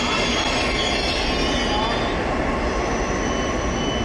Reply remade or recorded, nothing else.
recorded